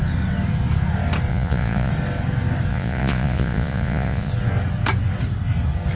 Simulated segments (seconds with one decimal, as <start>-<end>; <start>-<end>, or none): 1.3-1.9; 2.7-4.3